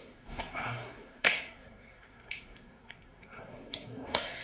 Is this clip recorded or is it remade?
remade